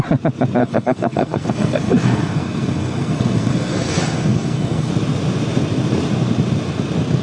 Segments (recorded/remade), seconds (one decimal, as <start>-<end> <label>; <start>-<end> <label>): 0.0-0.6 recorded; 0.6-4.9 remade; 4.9-7.2 recorded

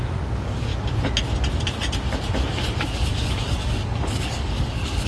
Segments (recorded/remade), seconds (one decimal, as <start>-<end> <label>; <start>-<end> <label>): 0.0-0.7 remade; 0.7-2.8 recorded; 2.8-5.1 remade

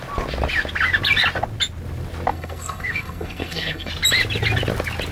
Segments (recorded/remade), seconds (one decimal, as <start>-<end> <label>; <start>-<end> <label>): 0.0-2.3 recorded; 2.3-3.9 remade; 3.9-5.1 recorded

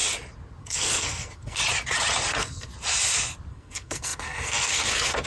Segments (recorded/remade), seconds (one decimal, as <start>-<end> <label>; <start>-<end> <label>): 0.0-0.6 recorded; 0.6-1.6 remade; 1.6-2.3 recorded; 2.3-2.7 remade; 2.7-3.5 recorded; 3.5-5.3 remade

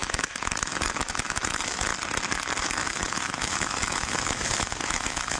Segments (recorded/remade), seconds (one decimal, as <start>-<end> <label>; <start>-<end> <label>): 0.0-1.9 remade; 1.9-2.6 recorded; 2.6-5.4 remade

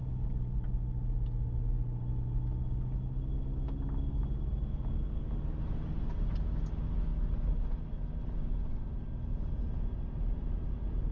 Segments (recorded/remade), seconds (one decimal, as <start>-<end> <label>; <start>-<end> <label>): 0.0-11.1 recorded

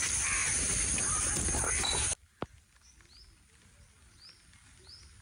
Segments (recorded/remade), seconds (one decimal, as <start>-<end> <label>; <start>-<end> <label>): 0.0-5.2 recorded